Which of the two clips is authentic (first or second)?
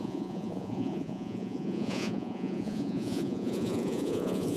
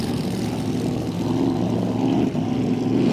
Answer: second